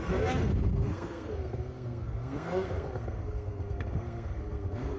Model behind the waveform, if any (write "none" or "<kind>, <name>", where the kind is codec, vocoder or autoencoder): codec, SNAC